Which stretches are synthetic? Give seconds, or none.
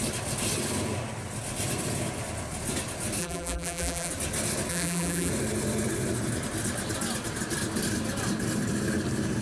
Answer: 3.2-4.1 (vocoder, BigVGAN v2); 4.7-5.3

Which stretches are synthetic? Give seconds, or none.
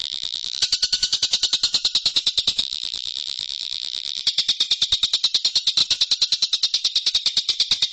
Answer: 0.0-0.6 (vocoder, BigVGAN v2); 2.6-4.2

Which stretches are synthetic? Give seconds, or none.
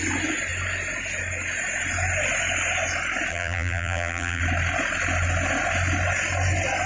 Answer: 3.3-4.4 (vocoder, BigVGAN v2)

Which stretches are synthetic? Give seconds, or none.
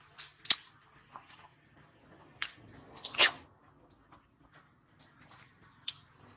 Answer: 1.5-3.3 (vocoder, BigVGAN v2)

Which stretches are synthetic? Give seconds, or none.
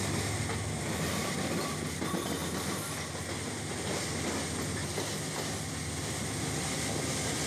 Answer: none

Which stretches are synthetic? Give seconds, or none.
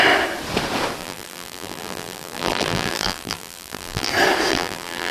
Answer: 1.0-4.1 (vocoder, BigVGAN v2); 4.5-5.1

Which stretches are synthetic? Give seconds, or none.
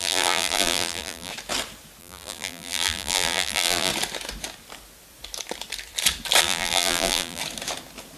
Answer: 0.0-1.3 (vocoder, BigVGAN v2); 2.0-3.9; 6.4-7.4